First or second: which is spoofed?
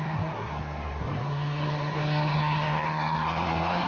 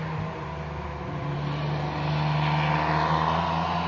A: first